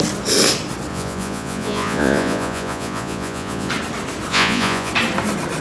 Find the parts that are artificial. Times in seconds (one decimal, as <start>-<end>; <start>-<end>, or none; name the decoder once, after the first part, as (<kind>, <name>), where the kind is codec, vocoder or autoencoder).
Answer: 0.9-3.7 (vocoder, Vocos); 4.3-4.9